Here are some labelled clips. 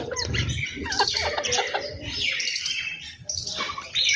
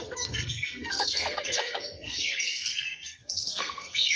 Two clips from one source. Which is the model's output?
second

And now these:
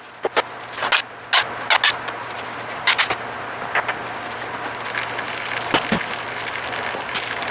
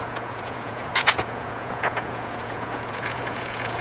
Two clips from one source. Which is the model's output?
second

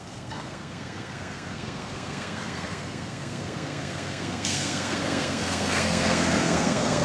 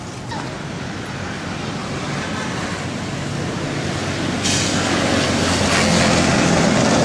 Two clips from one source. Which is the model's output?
first